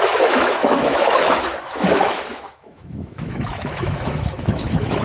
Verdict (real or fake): fake